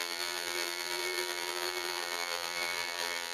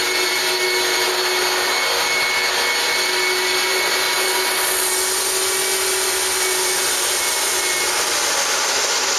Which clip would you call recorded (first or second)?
second